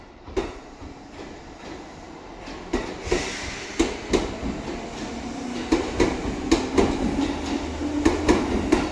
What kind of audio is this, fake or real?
real